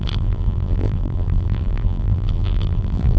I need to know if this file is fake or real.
fake